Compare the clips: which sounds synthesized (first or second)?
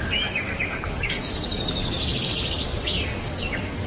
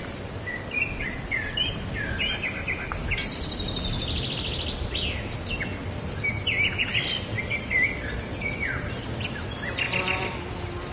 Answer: first